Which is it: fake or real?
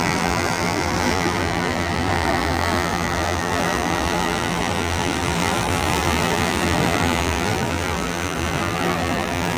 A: fake